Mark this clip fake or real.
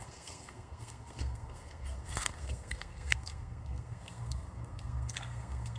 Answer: fake